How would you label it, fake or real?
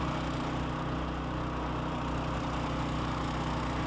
real